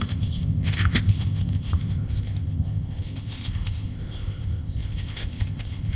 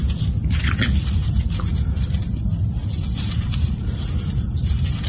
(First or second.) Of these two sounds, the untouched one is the second